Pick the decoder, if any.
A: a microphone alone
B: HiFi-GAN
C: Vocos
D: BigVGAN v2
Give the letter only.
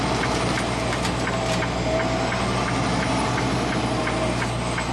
A